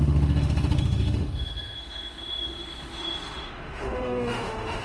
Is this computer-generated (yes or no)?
yes